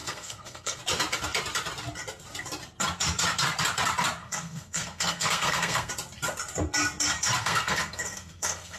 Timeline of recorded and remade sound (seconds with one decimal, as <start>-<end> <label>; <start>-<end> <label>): 0.0-0.8 remade; 0.8-4.2 recorded; 4.2-5.9 remade; 5.9-7.4 recorded; 7.4-8.8 remade